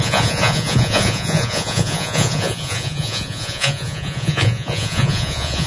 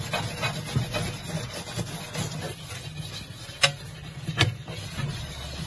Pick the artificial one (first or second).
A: first